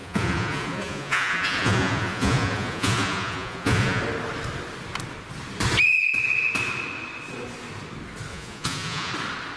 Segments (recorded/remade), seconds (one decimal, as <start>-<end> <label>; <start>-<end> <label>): 0.0-4.0 remade; 4.0-8.3 recorded; 8.3-9.1 remade; 9.1-9.6 recorded